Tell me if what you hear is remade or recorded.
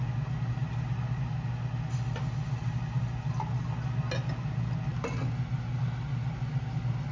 recorded